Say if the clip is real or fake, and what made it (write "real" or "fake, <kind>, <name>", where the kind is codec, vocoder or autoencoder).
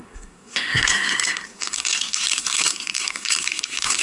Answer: fake, codec, SNAC